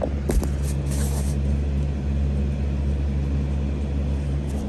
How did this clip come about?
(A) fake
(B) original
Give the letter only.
B